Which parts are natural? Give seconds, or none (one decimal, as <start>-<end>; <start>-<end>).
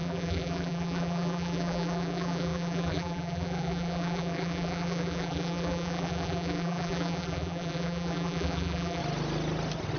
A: 9.0-10.0